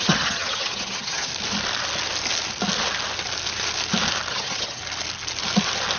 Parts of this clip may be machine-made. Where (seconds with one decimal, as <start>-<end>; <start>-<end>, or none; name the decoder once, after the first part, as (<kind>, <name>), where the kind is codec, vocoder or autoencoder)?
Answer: 0.0-1.3 (vocoder, HiFi-GAN); 4.3-4.8

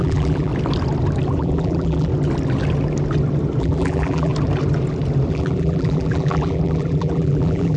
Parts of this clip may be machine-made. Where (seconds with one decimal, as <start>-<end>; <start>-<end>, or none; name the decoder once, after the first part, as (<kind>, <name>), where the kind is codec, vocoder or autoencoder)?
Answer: 0.0-0.5 (vocoder, BigVGAN v2); 1.3-2.1; 3.6-4.3; 5.3-7.8

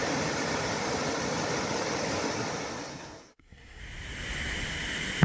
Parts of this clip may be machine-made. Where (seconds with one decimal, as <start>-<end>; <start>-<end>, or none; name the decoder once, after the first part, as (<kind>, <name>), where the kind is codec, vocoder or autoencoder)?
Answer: 2.9-3.8 (codec, SNAC)

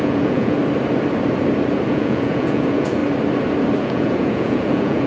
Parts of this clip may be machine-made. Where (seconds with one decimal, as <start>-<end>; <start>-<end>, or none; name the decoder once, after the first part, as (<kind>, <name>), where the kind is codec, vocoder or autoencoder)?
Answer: 0.0-0.6 (vocoder, Vocos); 1.9-3.0; 3.8-5.1

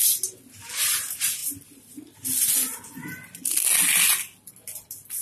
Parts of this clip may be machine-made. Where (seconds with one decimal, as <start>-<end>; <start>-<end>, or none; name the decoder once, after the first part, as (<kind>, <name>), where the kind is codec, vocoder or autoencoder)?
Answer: none

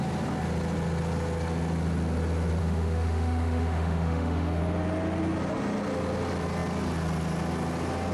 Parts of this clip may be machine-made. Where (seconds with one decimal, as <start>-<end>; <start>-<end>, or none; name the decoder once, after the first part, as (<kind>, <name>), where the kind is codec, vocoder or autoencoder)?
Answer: 2.6-4.6 (autoencoder, DAC-VAE)

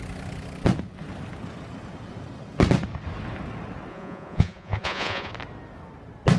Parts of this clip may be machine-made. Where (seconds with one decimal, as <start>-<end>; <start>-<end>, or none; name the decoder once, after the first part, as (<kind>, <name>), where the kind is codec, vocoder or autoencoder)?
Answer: 3.9-5.3 (vocoder, Vocos)